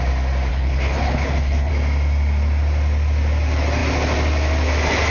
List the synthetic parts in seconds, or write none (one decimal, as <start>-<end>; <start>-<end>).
0.5-1.7